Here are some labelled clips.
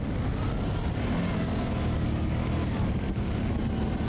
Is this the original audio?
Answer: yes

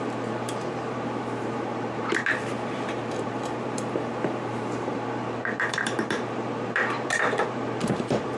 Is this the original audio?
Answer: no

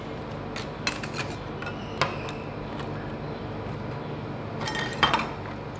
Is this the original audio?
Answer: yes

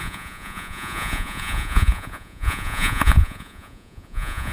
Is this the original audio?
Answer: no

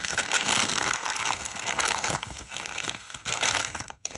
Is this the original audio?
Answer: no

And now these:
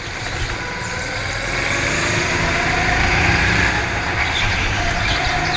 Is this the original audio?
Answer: yes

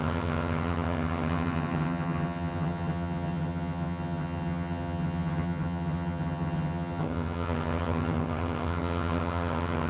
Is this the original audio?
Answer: no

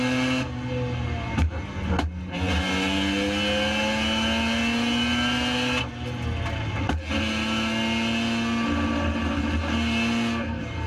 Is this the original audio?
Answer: yes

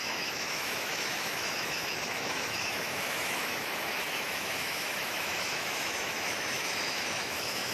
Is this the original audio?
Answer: no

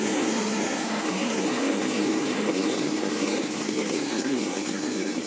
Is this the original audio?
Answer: no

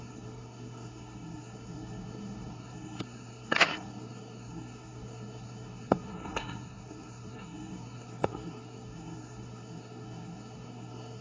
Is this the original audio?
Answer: no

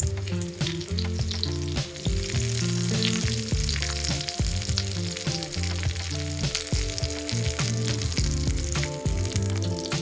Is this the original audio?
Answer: yes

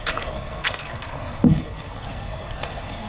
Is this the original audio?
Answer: no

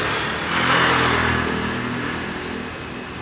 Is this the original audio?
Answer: yes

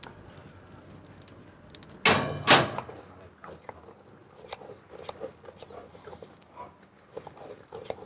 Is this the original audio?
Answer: yes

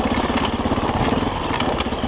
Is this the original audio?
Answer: yes